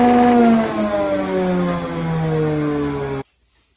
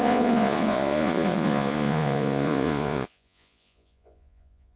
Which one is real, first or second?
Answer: first